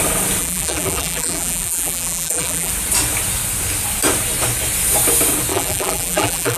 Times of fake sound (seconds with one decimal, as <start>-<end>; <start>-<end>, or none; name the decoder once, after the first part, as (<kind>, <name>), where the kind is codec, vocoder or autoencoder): 0.4-2.7 (vocoder, BigVGAN v2); 5.5-6.6